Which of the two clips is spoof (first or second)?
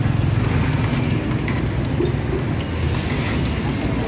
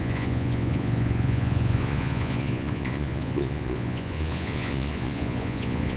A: second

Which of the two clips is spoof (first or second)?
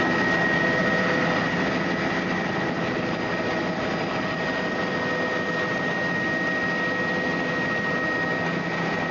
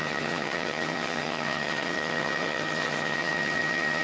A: second